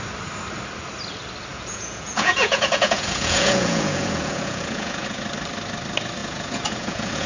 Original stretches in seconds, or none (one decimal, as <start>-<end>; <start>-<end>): 0.0-1.5; 5.2-6.2